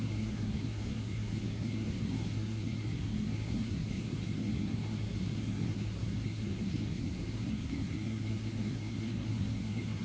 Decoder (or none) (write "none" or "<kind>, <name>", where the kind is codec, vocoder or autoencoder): codec, SNAC